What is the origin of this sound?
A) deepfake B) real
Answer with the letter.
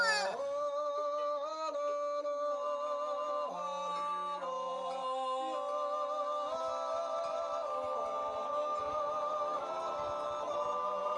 B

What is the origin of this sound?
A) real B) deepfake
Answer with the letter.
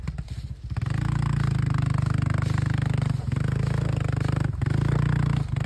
A